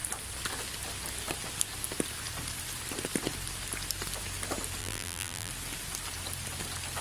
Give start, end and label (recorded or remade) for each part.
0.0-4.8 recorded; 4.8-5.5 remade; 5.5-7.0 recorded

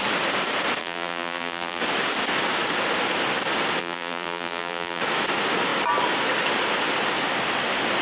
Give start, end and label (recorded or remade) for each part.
0.0-0.8 recorded; 0.8-1.8 remade; 1.8-3.8 recorded; 3.8-5.0 remade; 5.0-8.0 recorded

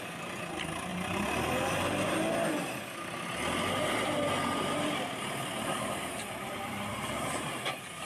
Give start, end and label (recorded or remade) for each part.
0.0-6.9 recorded; 6.9-7.6 remade; 7.6-8.1 recorded

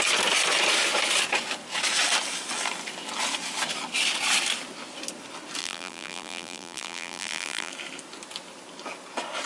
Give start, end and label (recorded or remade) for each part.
0.0-5.6 recorded; 5.6-7.7 remade; 7.7-9.5 recorded

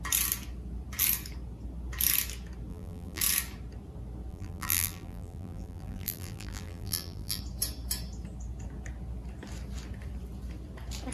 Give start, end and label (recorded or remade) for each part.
0.0-2.7 recorded; 2.7-3.2 remade; 3.2-4.3 recorded; 4.3-7.4 remade; 7.4-11.1 recorded